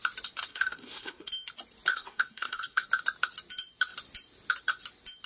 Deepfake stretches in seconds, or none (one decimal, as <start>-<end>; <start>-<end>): 0.5-1.3; 1.9-2.9